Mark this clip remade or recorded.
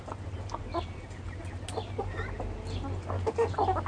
recorded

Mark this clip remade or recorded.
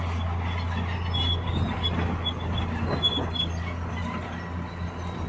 recorded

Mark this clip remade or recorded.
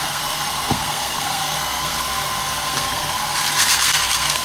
remade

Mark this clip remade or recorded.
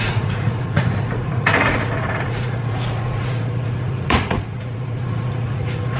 remade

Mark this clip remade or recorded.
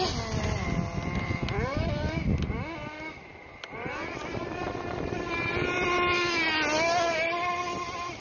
recorded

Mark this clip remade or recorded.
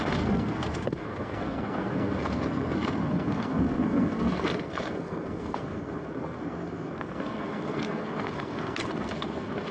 remade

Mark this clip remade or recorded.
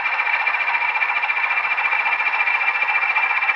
recorded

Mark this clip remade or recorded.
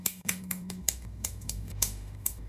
remade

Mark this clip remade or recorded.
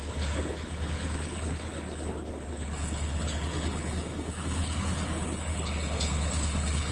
remade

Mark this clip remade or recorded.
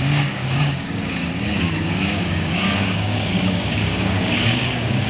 remade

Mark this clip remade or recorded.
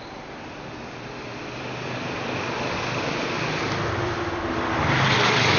recorded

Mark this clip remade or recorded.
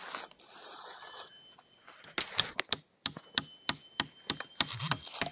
recorded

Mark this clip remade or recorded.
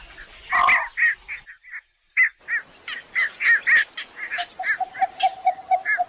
recorded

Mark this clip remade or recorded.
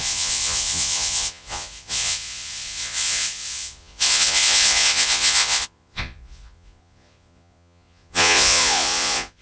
remade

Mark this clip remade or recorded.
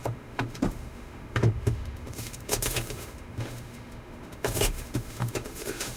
remade